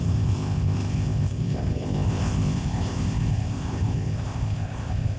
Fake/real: fake